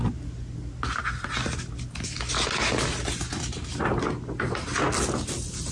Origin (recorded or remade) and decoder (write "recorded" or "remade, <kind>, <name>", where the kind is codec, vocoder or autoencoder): recorded